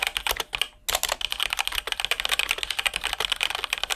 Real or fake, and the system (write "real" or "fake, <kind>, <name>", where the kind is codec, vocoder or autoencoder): real